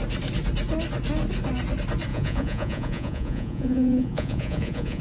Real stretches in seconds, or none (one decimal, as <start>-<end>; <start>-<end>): 0.0-2.1